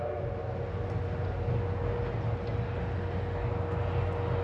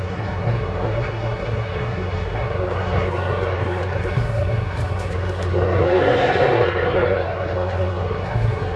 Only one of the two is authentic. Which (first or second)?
first